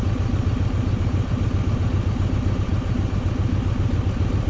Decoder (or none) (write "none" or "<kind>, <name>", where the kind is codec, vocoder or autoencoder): none